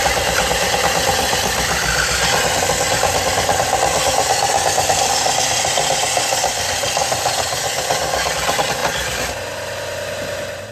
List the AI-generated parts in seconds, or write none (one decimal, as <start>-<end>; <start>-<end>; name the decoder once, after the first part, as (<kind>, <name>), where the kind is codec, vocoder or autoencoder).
none